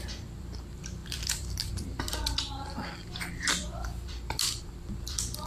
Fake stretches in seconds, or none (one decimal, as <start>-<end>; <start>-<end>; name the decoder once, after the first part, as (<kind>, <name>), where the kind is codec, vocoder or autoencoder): 0.0-5.5 (vocoder, BigVGAN v2)

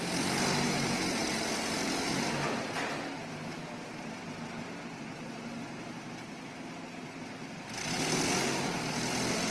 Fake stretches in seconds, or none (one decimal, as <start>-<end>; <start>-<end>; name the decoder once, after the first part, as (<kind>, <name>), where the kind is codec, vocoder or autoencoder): none

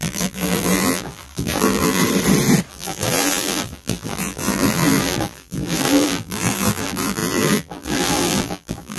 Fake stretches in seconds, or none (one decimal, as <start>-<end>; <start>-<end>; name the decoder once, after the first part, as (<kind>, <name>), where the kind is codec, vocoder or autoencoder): 0.0-2.0 (vocoder, BigVGAN v2); 2.7-9.0

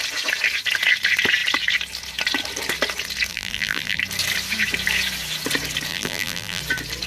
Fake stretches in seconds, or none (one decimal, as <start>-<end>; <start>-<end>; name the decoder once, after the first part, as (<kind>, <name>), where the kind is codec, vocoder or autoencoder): 3.3-4.0 (vocoder, BigVGAN v2); 5.9-6.6